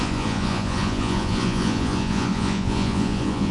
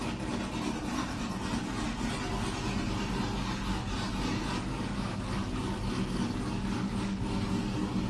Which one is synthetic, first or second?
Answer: first